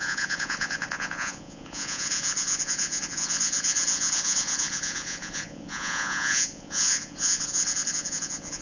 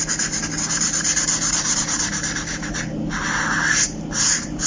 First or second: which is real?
second